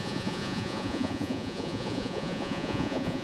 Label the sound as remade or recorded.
remade